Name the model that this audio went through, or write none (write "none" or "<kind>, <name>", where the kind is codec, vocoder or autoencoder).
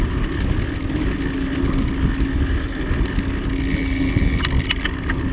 none